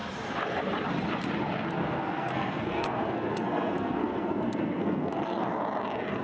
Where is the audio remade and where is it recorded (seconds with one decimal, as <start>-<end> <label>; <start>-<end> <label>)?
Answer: 0.0-1.8 recorded; 1.8-5.5 remade; 5.5-6.2 recorded